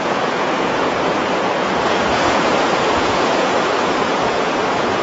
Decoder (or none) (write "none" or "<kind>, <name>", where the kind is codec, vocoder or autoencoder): vocoder, Vocos